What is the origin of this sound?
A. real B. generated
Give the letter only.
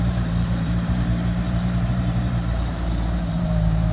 B